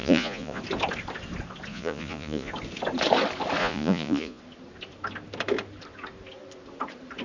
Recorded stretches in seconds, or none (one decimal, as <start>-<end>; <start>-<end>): 0.6-1.7; 2.5-3.6; 4.4-7.2